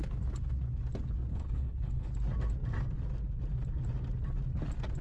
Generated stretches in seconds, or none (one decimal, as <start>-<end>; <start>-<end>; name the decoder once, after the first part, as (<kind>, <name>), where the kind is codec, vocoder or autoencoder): 1.3-2.1 (codec, HILCodec)